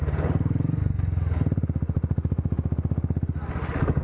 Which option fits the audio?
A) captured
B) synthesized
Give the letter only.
A